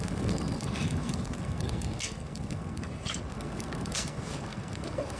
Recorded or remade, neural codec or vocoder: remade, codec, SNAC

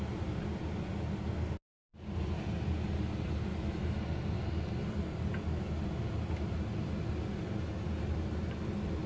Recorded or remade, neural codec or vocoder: recorded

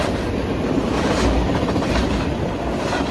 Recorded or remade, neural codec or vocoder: recorded